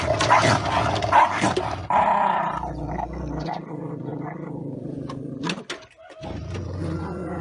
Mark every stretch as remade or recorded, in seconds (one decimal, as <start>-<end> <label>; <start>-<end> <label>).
0.0-7.4 recorded